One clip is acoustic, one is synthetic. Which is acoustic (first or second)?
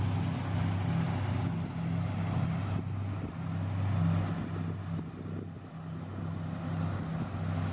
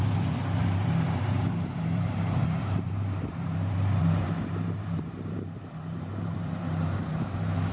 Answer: first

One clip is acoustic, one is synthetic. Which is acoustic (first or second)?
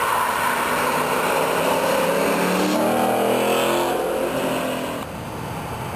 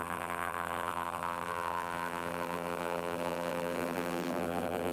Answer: first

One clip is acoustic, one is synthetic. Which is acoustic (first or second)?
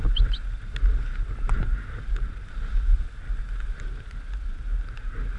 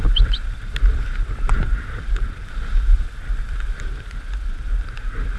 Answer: first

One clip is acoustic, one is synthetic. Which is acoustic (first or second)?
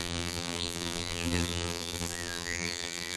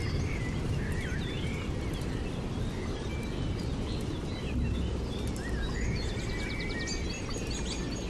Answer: second